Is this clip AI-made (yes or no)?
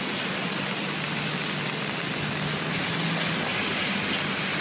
no